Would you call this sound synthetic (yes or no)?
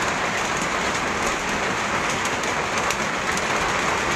no